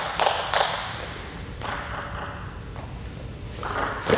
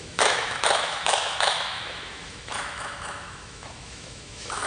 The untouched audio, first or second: first